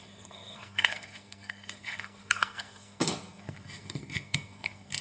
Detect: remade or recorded remade